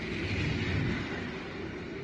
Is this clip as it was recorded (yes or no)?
yes